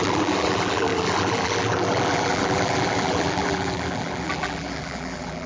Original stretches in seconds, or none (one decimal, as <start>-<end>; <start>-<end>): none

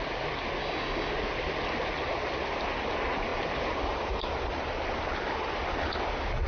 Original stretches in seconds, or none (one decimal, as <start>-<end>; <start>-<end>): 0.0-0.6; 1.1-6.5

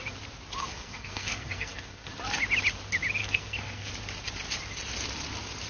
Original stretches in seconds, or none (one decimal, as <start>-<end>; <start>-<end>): 0.0-0.6; 2.1-3.2; 3.9-5.7

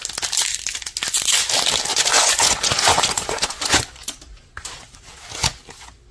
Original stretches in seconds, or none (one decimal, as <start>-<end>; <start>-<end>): 0.0-1.9; 4.2-6.1

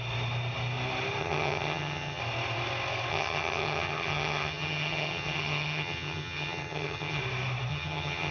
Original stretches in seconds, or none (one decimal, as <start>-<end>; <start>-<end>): 0.0-1.2; 2.2-3.1; 7.2-7.7